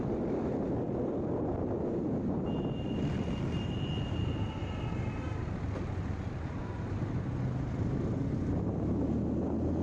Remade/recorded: recorded